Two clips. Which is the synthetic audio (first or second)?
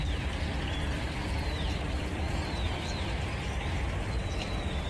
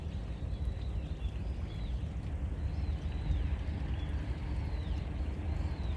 first